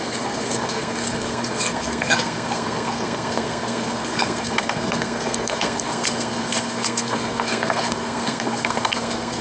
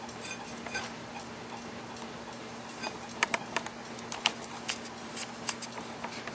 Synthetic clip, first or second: first